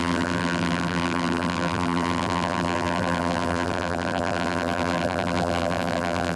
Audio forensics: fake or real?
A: fake